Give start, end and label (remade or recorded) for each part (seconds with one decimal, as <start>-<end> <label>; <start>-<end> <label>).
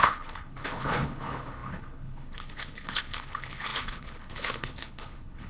0.0-5.5 remade